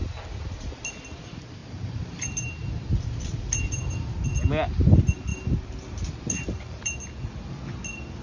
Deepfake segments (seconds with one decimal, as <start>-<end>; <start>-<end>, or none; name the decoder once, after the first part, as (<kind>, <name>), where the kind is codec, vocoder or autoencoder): 0.0-0.9 (vocoder, BigVGAN v2); 1.6-4.2; 5.3-7.1